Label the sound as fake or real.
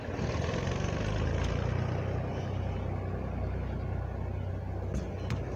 real